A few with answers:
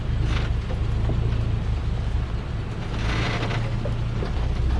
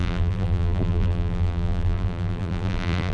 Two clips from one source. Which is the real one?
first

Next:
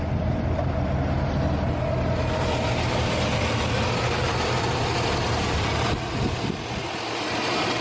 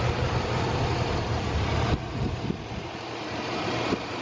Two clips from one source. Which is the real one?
first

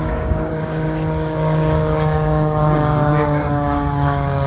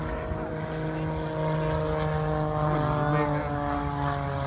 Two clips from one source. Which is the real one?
second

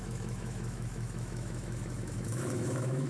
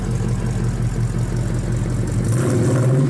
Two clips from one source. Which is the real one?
second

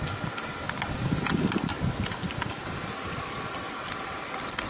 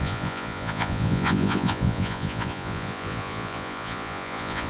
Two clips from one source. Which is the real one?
first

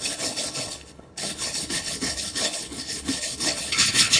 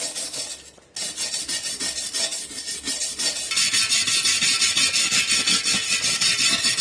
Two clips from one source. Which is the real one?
second